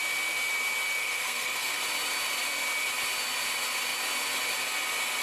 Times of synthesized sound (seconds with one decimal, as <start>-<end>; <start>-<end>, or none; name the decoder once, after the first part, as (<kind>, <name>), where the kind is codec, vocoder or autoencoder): 1.0-1.8 (codec, SNAC)